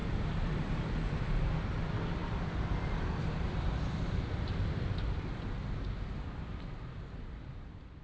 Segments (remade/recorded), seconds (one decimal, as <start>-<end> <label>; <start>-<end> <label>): 0.0-8.0 remade